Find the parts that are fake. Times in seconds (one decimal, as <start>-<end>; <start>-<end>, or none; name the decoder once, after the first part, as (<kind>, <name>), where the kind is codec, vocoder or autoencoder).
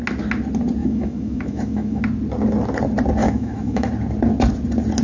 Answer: 0.8-2.0 (autoencoder, DAC-VAE); 3.2-3.9